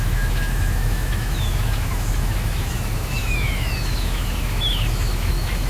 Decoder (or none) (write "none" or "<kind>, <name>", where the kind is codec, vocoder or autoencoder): autoencoder, DAC-VAE